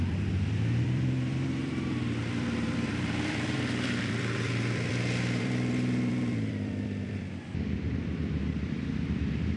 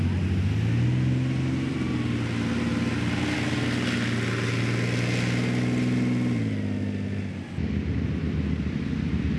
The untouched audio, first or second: second